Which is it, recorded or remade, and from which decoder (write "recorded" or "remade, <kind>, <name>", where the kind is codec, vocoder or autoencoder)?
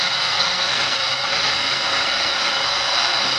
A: remade, codec, SNAC